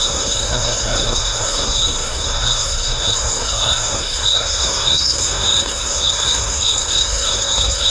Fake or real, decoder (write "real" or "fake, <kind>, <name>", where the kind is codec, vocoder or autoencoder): fake, codec, SNAC